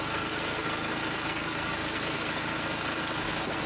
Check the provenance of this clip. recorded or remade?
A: remade